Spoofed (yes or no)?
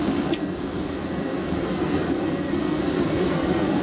yes